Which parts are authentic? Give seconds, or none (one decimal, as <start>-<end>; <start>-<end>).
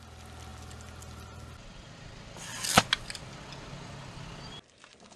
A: 0.0-5.2